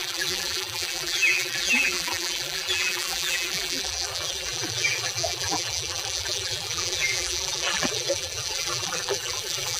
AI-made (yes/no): yes